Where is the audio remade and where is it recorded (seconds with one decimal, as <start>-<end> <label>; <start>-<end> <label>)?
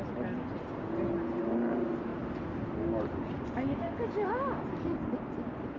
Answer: 0.0-5.8 recorded